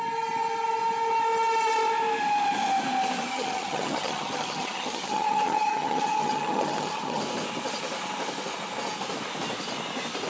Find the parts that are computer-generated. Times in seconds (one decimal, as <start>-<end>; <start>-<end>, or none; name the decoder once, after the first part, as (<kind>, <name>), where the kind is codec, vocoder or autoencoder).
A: 3.3-7.2 (vocoder, HiFi-GAN)